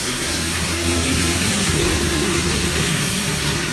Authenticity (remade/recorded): remade